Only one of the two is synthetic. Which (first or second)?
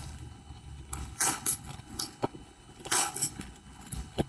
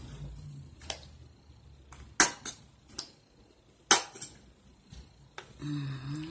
first